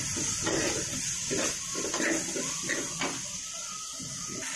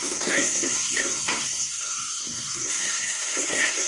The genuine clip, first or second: first